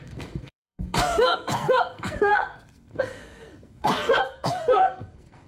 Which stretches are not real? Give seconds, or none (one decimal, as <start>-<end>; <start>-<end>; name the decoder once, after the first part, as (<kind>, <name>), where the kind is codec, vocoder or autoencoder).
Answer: 0.0-5.5 (codec, SNAC)